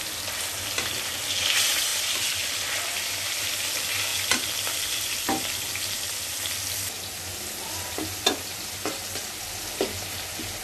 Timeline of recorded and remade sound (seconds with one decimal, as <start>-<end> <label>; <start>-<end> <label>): 0.0-10.6 recorded